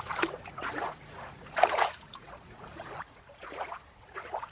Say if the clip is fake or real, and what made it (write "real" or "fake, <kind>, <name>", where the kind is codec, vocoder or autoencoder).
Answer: fake, vocoder, Vocos